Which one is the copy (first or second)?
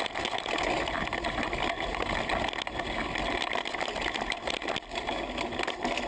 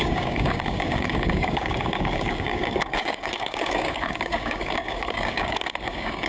second